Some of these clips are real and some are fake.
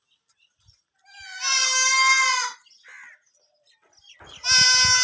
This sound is real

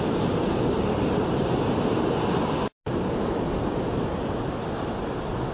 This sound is real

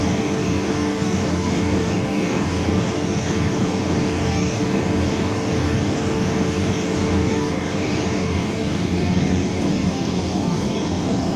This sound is fake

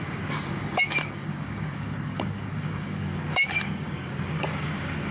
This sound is fake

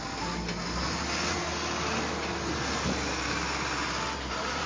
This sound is real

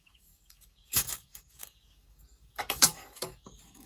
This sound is fake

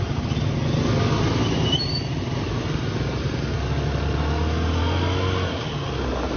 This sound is real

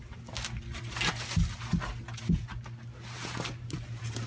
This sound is real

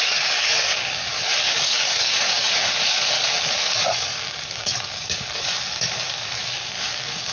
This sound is fake